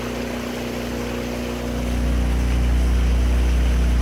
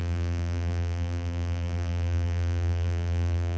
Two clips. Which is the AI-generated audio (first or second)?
second